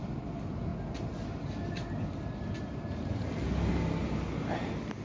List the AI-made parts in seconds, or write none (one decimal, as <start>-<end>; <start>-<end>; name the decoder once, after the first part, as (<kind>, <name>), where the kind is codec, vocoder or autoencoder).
none